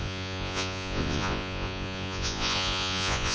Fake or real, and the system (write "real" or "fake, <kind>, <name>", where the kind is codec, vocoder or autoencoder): fake, vocoder, Vocos